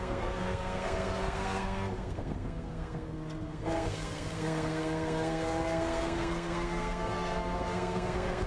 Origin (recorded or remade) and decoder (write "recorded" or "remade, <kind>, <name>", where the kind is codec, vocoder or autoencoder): remade, codec, SNAC